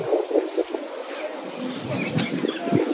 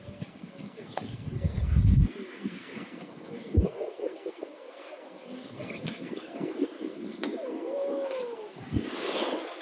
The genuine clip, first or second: first